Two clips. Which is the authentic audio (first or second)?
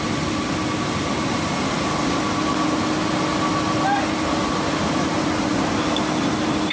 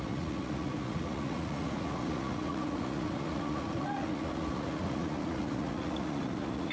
first